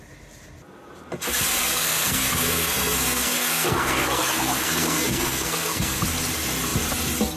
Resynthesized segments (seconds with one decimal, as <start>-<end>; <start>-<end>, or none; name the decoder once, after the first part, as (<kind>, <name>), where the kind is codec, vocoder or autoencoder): 1.6-6.0 (codec, SNAC)